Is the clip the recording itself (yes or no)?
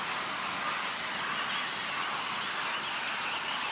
yes